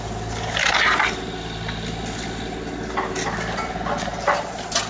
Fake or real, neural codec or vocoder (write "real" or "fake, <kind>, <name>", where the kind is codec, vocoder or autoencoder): real